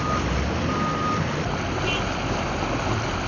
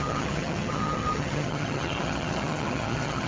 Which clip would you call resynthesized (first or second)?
second